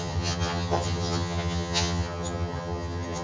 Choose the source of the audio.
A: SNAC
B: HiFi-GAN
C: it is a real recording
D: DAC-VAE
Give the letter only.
B